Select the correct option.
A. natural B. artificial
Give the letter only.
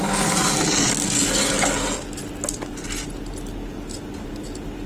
A